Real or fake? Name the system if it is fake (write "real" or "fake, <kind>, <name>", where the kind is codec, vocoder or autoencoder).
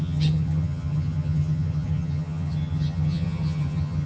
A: fake, vocoder, HiFi-GAN